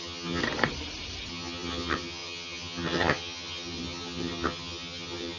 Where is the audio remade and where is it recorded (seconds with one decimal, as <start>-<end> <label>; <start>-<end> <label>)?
0.0-0.4 remade; 0.4-1.3 recorded; 1.3-5.4 remade